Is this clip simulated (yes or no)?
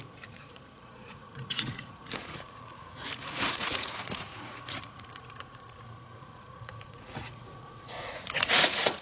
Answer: yes